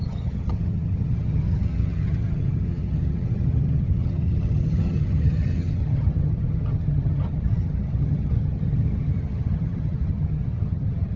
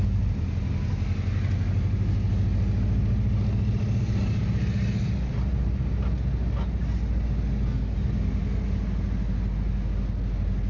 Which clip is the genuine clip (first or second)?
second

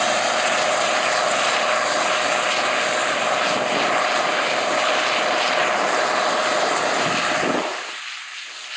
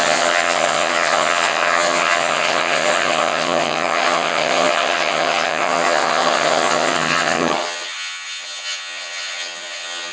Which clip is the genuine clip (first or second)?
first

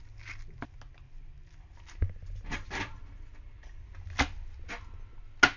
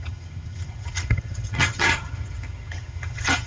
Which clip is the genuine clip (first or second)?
first